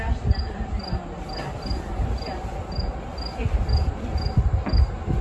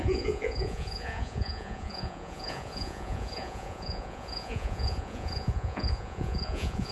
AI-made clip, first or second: second